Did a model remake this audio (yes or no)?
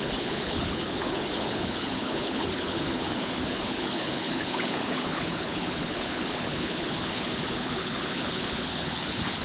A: yes